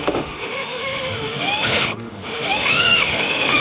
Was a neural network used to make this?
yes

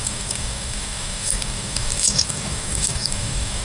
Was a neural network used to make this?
yes